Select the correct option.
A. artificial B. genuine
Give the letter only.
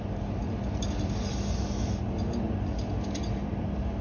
B